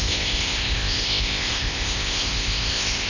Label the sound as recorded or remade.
remade